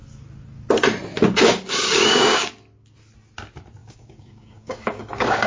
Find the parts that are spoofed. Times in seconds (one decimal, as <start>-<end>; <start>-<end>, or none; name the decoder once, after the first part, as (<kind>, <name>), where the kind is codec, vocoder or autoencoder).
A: 1.4-2.5 (codec, DAC); 3.8-5.5